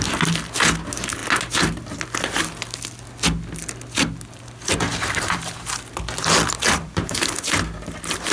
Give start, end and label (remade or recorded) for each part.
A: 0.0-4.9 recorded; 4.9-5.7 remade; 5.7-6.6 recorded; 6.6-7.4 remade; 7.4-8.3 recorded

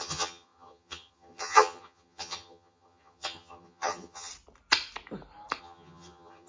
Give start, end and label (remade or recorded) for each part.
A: 0.0-4.3 remade; 4.3-5.6 recorded; 5.6-6.5 remade

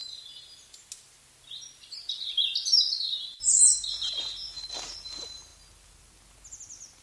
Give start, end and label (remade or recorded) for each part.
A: 0.0-7.0 recorded

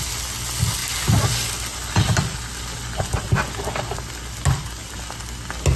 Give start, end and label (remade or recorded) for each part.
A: 0.0-5.8 recorded

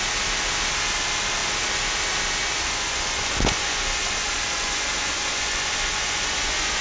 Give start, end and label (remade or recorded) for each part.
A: 0.0-2.4 recorded; 2.4-6.8 remade

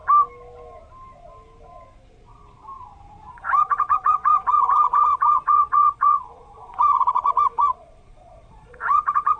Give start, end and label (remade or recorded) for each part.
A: 0.0-3.3 recorded; 3.3-9.4 remade

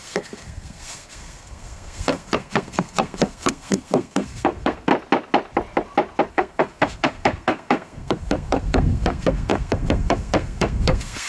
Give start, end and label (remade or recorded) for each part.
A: 0.0-4.9 remade; 4.9-6.3 recorded; 6.3-11.3 remade

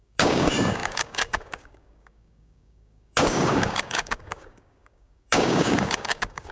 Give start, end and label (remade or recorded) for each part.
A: 0.0-6.5 remade